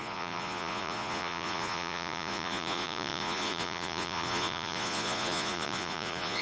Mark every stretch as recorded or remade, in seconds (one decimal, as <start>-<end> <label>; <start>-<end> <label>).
0.0-6.4 remade